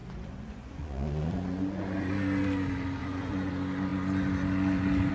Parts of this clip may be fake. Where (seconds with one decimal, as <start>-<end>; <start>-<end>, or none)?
0.0-2.1; 3.0-3.5